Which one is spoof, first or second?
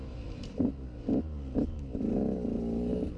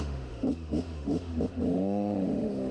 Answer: second